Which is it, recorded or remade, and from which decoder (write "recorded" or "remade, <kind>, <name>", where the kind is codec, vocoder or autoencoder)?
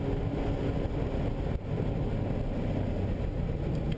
recorded